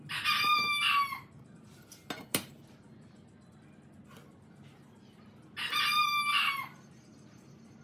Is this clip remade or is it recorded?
recorded